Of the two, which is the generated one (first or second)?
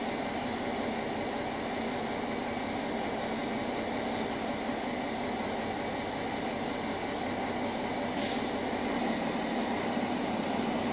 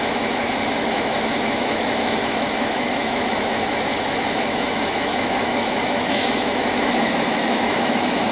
second